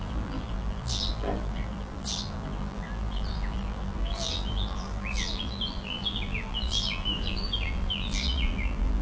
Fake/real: fake